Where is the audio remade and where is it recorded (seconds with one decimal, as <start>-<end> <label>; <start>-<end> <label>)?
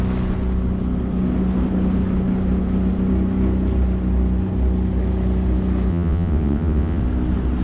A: 0.0-5.9 recorded; 5.9-7.0 remade; 7.0-7.6 recorded